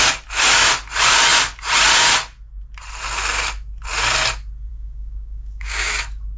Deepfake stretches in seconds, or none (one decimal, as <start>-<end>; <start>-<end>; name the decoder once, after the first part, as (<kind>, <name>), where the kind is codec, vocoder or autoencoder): 4.7-5.9 (codec, DAC)